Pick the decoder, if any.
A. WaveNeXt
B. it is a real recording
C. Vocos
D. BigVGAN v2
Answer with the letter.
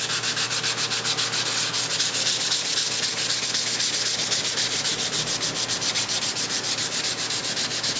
B